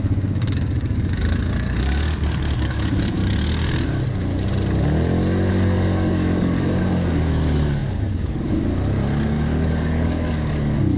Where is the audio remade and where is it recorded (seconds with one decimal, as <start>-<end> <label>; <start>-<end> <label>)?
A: 0.0-3.2 remade; 3.2-5.5 recorded; 5.5-11.0 remade